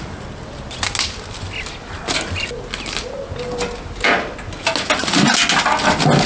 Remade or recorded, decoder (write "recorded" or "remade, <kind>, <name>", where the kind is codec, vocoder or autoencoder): recorded